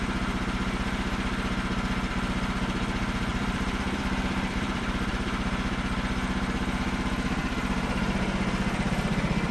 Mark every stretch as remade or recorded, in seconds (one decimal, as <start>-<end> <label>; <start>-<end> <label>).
0.0-3.3 recorded; 3.3-5.1 remade; 5.1-9.5 recorded